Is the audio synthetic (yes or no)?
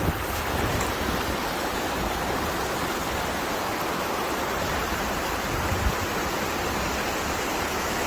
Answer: no